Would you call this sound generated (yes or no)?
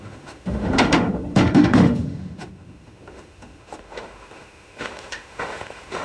yes